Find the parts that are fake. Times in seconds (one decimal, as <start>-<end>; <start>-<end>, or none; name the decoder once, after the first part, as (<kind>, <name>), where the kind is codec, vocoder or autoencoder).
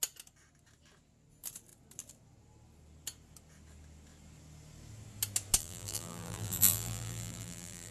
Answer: 5.6-7.9 (vocoder, BigVGAN v2)